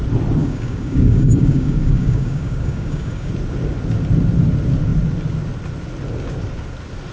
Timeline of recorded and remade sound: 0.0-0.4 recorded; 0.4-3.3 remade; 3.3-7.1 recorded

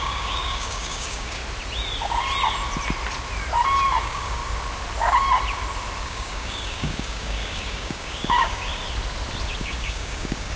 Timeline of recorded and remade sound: 0.0-1.4 remade; 1.4-4.0 recorded; 4.0-4.4 remade; 4.4-6.0 recorded; 6.0-8.7 remade; 8.7-9.6 recorded; 9.6-10.6 remade